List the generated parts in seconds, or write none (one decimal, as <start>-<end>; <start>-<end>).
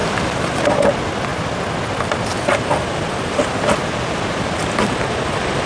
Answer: none